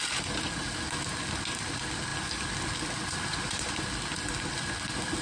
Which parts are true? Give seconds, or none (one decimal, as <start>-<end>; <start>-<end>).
0.0-5.2